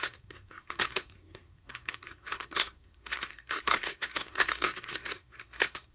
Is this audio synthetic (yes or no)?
yes